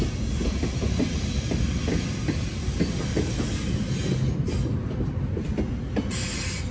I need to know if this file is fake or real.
real